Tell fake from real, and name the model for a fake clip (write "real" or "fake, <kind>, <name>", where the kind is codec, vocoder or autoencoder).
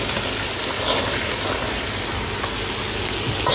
real